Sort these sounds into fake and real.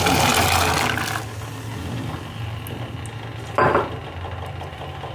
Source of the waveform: real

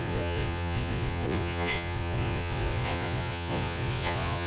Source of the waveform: fake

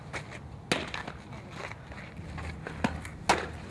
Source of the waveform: real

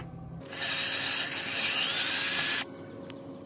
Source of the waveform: real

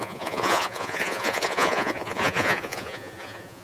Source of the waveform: fake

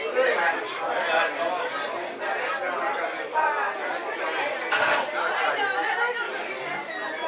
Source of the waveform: real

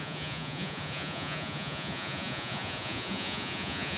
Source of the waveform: fake